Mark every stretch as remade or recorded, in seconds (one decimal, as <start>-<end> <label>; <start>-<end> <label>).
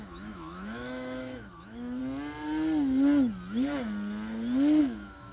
0.0-2.0 remade; 2.0-4.8 recorded; 4.8-5.3 remade